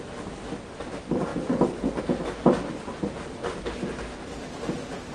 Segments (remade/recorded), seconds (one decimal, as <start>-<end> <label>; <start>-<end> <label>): 0.0-3.4 recorded; 3.4-4.0 remade; 4.0-5.1 recorded